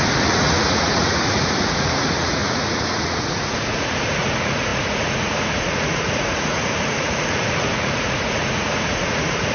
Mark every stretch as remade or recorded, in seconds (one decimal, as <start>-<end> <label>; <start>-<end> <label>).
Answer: 0.0-9.5 remade